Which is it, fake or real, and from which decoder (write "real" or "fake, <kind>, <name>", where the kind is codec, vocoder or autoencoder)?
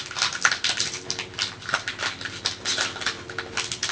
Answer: real